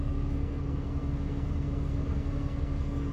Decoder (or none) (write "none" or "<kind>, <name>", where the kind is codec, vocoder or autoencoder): codec, SNAC